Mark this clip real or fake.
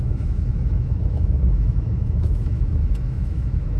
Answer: fake